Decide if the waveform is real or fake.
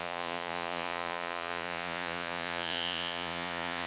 fake